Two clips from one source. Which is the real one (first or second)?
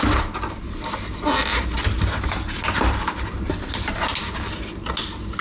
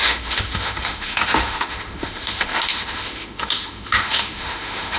first